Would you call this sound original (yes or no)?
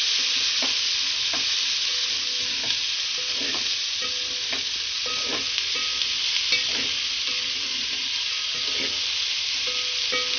yes